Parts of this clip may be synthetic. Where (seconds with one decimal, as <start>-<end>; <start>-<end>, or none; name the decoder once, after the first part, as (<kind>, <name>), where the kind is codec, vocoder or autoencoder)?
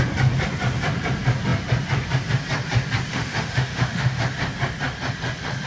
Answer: 3.1-4.2 (autoencoder, DAC-VAE)